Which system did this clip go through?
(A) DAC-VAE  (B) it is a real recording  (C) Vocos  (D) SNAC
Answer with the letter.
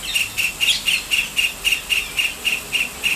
B